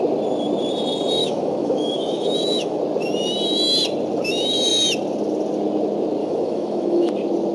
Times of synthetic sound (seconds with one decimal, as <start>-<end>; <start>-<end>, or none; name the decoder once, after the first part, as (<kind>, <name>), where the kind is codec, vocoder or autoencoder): 1.2-2.8 (autoencoder, DAC-VAE); 6.2-7.1